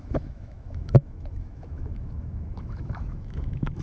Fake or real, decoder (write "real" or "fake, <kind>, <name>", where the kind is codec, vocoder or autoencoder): fake, autoencoder, DAC-VAE